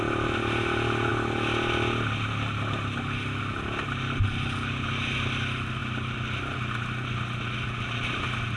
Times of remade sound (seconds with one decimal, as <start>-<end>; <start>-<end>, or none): none